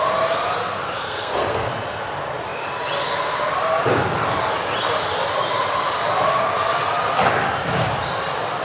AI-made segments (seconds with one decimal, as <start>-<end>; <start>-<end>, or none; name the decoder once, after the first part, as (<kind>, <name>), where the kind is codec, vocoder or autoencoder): 0.6-1.7 (codec, SNAC)